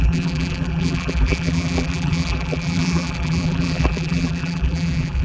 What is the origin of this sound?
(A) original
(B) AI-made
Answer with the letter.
B